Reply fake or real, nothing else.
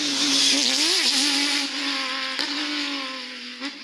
real